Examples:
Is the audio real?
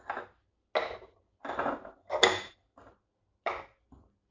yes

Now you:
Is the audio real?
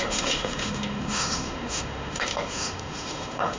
no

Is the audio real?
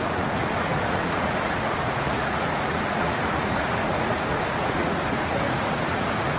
no